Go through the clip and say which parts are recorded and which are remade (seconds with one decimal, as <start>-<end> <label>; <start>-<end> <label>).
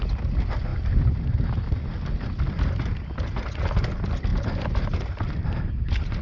0.0-4.3 recorded; 4.3-5.7 remade; 5.7-6.2 recorded